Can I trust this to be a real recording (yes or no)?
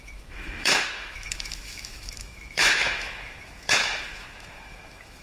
no